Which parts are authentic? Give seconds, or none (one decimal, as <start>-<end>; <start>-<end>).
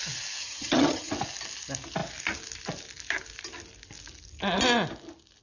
0.0-0.4; 1.1-5.4